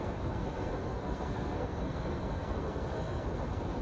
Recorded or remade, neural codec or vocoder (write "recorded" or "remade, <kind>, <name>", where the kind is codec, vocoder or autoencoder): remade, codec, SNAC